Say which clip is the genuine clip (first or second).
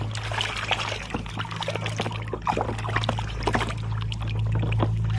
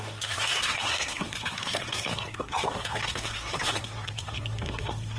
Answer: first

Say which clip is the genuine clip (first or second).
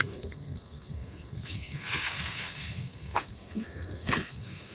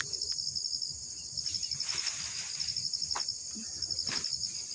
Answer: second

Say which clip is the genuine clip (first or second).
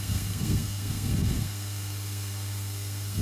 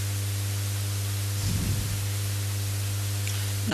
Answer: second